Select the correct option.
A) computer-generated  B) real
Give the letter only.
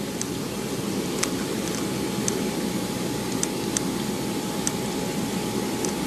A